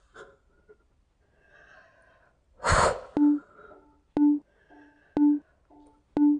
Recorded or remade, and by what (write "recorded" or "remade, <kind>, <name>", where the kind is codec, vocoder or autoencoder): recorded